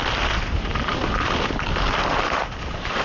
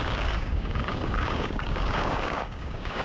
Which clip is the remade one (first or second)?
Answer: second